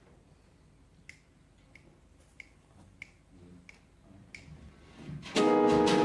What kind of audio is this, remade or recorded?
recorded